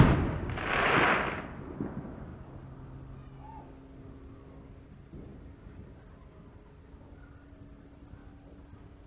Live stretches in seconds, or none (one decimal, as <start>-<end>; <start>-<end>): 0.0-9.1

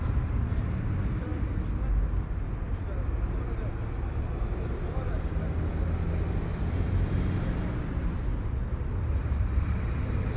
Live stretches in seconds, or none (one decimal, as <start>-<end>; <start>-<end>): 1.3-6.5; 8.3-9.2

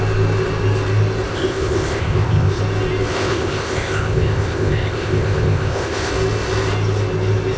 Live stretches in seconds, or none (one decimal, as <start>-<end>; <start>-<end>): 0.0-1.3; 2.6-3.1; 6.1-7.6